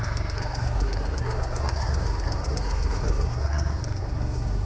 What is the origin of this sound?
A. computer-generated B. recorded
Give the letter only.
A